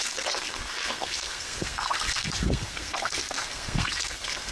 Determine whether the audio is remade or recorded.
remade